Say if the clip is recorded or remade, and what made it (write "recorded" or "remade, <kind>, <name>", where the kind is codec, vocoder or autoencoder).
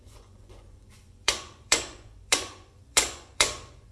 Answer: remade, vocoder, Vocos